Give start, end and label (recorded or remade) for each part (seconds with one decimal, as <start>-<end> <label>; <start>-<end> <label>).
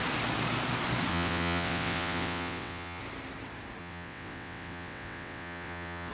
0.0-1.1 recorded; 1.1-3.0 remade; 3.0-3.8 recorded; 3.8-6.1 remade